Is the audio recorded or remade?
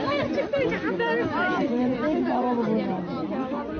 recorded